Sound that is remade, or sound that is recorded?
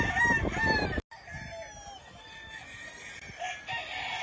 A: recorded